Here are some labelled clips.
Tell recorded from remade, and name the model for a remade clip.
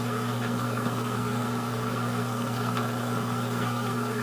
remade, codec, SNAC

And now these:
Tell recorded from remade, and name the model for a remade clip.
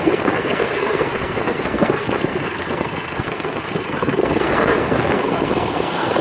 remade, codec, SNAC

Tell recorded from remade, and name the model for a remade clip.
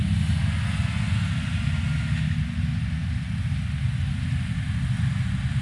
recorded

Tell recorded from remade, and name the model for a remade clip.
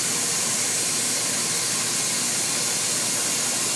recorded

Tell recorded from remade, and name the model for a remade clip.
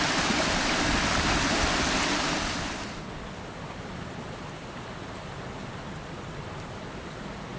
recorded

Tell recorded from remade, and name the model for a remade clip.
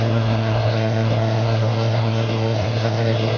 remade, codec, SNAC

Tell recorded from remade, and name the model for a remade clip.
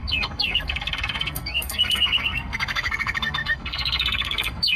remade, codec, SNAC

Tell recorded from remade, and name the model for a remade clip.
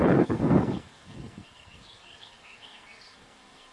remade, codec, SNAC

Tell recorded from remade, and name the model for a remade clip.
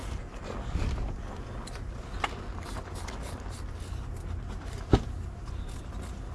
recorded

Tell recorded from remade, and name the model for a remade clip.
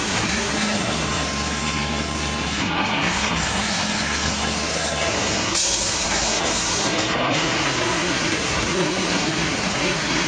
remade, codec, SNAC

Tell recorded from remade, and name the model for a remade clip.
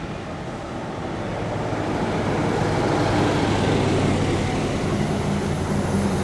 recorded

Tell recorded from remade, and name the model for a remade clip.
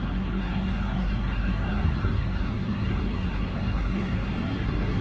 remade, codec, SNAC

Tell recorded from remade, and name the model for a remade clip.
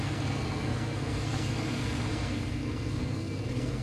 remade, codec, SNAC